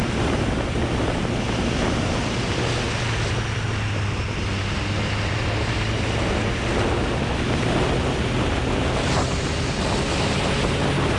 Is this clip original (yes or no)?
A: yes